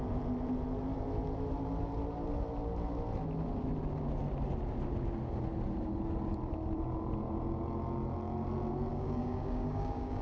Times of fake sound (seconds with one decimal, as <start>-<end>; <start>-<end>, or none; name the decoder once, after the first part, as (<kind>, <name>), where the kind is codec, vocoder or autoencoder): 8.9-10.2 (codec, DAC)